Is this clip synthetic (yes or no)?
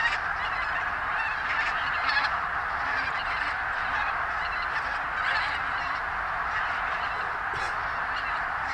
no